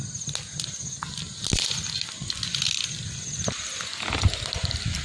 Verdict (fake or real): real